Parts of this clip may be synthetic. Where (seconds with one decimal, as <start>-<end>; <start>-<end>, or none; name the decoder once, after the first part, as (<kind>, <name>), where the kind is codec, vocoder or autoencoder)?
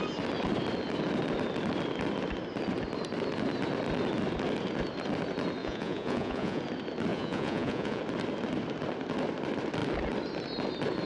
5.6-6.6 (vocoder, Vocos); 7.1-8.0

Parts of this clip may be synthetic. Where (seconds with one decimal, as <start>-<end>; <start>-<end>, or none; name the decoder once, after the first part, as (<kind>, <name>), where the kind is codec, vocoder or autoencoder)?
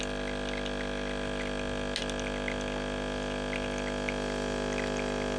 none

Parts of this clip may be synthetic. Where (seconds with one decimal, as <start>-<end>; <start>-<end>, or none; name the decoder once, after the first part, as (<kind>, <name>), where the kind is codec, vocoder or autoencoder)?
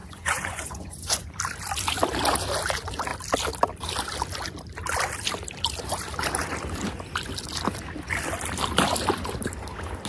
0.0-1.3 (vocoder, Vocos)